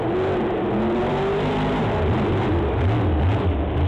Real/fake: fake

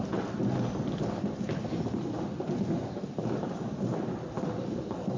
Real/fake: real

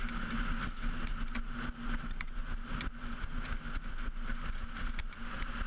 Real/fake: real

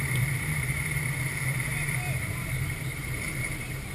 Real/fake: fake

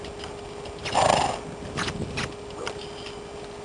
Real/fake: real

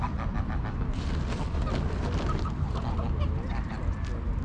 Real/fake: real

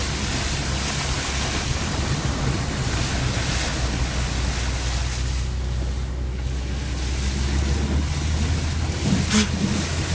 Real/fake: real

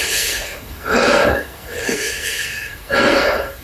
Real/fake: fake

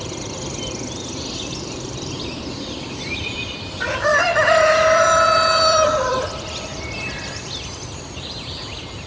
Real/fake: fake